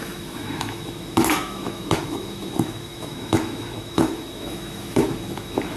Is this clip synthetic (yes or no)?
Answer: yes